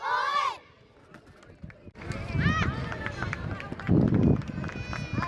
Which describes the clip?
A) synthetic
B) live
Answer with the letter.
B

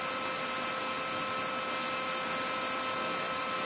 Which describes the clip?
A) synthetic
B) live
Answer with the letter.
B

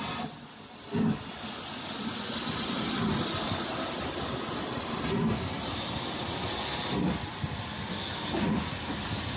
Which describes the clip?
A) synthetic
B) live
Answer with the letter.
B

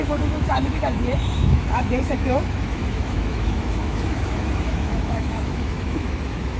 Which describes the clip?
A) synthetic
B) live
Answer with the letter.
A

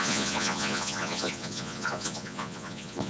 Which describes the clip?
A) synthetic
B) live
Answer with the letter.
A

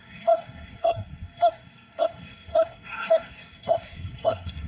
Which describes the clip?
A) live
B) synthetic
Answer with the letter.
B